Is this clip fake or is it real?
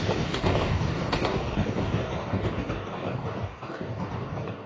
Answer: fake